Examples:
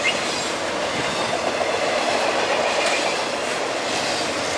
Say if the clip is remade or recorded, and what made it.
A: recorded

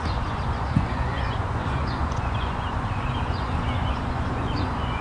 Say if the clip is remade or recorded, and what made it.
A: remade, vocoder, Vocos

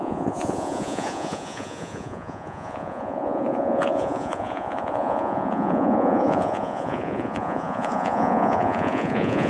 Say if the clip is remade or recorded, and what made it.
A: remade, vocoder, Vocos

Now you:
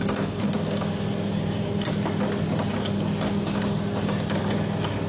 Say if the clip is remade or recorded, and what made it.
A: recorded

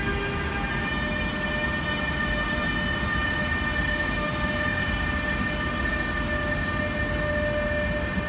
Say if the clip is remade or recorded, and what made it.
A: recorded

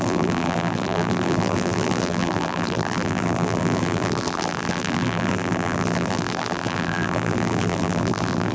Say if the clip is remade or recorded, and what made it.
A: remade, vocoder, BigVGAN v2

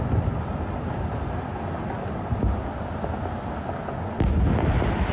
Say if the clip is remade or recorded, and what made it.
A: recorded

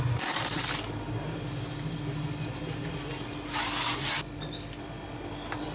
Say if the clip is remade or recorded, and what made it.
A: recorded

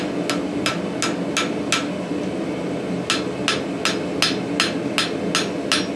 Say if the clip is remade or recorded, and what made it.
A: recorded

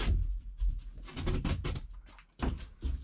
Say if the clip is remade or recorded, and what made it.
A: recorded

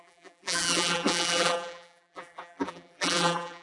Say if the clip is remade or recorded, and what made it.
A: remade, vocoder, BigVGAN v2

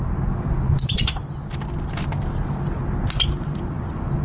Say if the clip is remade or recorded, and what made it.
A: recorded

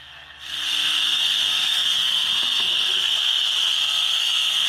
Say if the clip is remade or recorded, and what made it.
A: remade, codec, SNAC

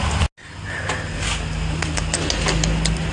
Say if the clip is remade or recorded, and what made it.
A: recorded